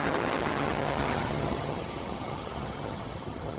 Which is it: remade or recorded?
remade